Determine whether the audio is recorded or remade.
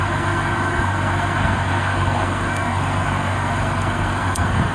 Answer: remade